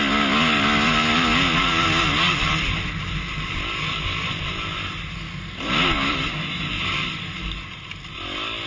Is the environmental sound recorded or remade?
recorded